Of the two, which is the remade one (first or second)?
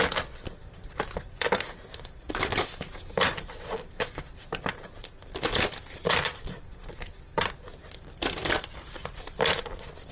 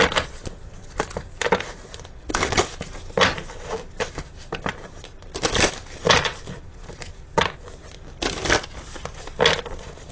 first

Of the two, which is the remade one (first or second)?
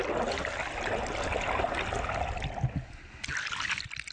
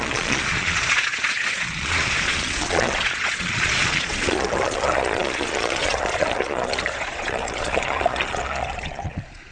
second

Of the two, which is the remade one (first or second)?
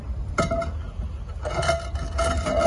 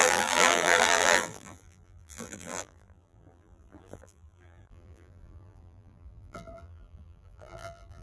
second